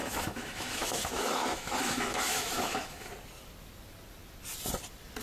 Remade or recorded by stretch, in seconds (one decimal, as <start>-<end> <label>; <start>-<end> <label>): 0.0-3.1 remade; 3.1-5.2 recorded